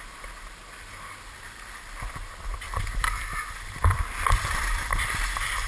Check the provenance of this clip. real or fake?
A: fake